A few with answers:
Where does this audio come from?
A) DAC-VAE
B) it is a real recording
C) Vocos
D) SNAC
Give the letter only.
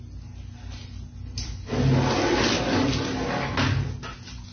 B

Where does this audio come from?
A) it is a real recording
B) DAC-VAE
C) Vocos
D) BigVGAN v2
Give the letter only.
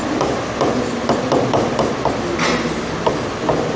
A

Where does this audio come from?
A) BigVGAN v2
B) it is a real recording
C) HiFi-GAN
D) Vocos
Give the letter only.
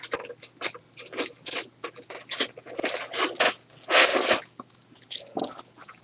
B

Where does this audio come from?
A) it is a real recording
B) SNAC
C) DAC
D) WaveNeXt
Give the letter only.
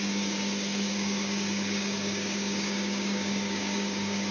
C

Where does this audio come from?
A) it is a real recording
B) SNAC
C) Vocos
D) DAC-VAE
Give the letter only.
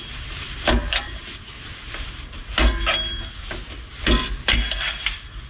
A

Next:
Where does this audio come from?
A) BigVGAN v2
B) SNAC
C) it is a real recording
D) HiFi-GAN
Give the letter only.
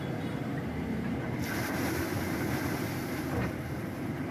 A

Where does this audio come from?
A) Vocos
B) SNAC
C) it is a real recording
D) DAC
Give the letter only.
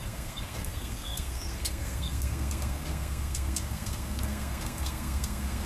B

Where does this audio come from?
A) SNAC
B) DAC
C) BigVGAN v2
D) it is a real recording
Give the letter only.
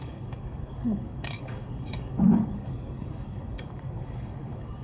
B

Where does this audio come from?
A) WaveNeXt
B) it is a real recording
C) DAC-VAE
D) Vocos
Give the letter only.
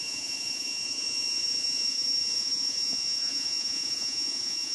D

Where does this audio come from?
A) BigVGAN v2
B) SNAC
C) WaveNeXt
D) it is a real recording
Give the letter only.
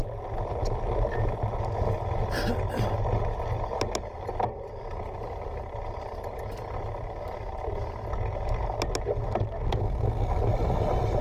D